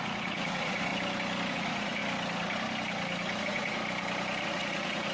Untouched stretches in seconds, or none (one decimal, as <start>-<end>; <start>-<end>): 0.9-1.5; 2.0-3.4; 3.8-4.4